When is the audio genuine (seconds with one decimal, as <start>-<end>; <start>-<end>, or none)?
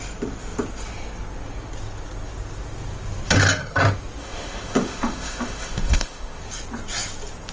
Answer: 0.0-4.2; 6.4-7.5